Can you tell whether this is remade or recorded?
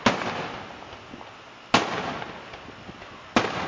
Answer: recorded